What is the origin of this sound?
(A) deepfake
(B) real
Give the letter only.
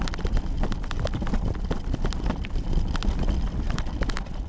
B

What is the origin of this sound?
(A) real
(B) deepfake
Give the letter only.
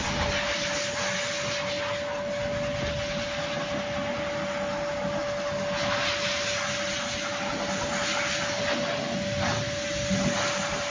A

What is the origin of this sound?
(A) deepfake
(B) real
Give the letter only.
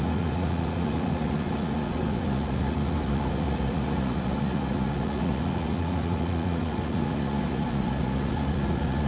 A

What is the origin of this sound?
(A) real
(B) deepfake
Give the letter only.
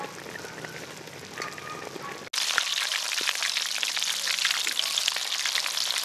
A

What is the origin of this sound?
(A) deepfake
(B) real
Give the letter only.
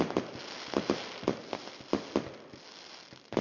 B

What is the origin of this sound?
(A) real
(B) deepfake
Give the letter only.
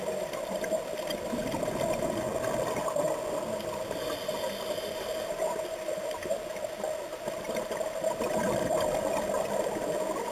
A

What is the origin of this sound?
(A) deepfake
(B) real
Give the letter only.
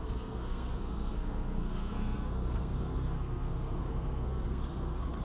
A